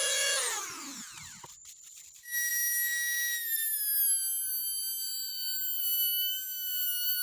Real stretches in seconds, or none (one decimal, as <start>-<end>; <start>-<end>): 0.0-7.2